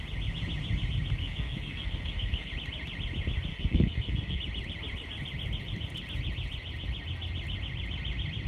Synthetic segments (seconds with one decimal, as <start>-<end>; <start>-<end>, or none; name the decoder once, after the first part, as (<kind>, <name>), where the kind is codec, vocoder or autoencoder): 1.2-2.5 (codec, SNAC); 3.5-4.4